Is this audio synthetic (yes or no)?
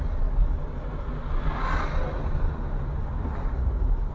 no